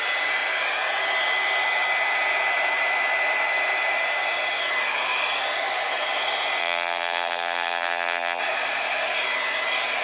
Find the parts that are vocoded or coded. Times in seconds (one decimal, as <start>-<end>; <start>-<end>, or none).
6.6-8.4